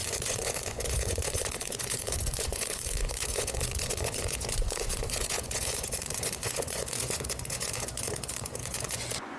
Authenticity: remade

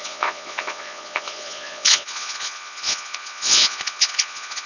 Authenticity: remade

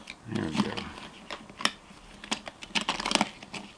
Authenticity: recorded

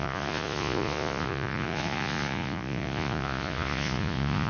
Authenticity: remade